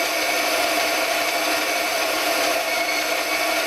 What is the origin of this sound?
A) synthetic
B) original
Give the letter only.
B